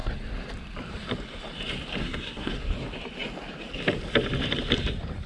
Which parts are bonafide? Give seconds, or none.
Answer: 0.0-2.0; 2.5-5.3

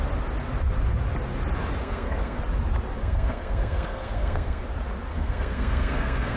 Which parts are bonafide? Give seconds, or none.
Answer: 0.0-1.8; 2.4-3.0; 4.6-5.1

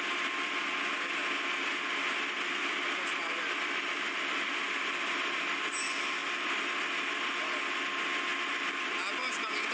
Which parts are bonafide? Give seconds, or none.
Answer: 0.0-9.7